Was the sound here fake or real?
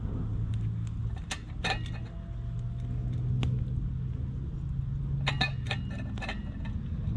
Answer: real